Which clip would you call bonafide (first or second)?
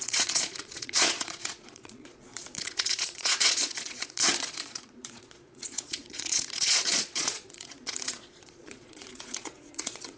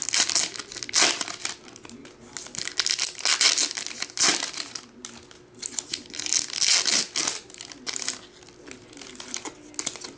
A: second